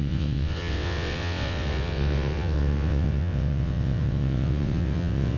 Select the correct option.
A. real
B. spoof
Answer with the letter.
B